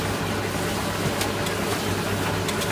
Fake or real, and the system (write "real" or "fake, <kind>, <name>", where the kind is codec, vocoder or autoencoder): real